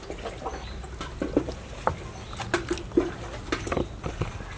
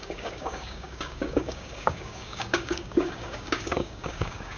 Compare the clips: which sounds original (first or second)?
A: first